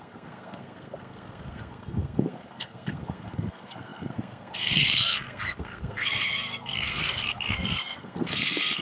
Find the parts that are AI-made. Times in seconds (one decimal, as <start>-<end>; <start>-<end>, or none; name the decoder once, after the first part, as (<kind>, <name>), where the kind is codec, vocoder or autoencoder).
0.0-8.8 (codec, SNAC)